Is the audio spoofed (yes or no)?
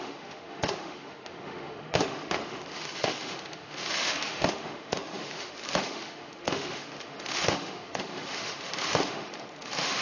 yes